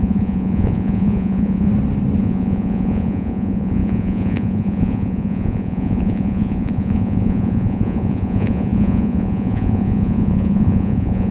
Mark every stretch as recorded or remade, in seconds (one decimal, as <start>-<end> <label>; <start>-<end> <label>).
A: 0.0-1.7 remade; 1.7-2.2 recorded; 2.2-11.3 remade